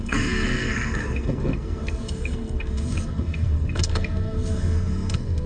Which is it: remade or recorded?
remade